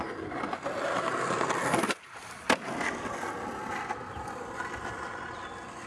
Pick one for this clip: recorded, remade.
recorded